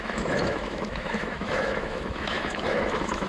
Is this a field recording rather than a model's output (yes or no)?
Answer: no